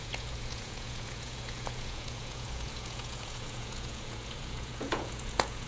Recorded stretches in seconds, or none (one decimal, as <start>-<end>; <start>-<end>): none